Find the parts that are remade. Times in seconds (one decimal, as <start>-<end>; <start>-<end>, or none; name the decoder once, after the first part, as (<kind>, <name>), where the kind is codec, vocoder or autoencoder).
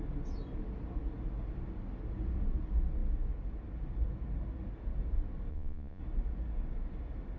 5.5-6.0 (vocoder, Vocos)